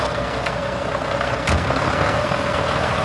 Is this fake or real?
fake